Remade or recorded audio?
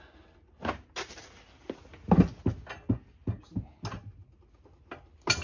recorded